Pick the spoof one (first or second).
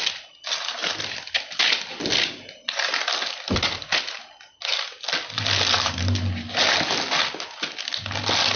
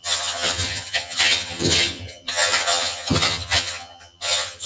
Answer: second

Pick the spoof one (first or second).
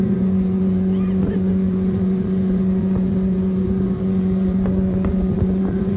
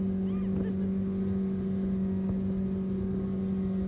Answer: first